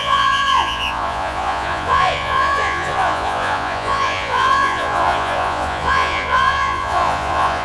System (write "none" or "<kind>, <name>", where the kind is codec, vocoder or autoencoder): vocoder, Vocos